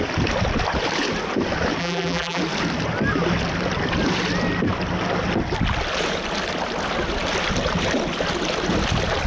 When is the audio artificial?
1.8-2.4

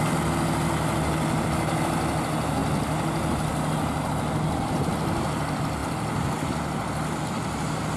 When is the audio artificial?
none

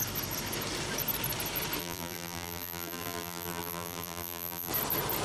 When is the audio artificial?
1.8-4.7

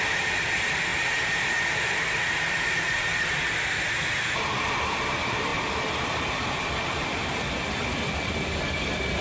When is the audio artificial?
0.0-9.2